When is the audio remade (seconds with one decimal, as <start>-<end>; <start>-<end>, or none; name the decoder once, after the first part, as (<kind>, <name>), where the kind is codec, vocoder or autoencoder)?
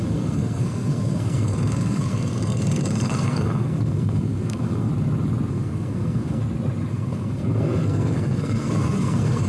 0.0-4.9 (codec, SNAC); 5.5-6.4; 6.9-9.5